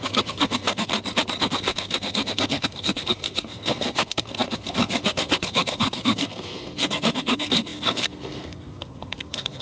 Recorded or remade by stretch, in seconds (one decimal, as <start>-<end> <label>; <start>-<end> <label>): 0.0-0.9 remade; 0.9-1.4 recorded; 1.4-9.6 remade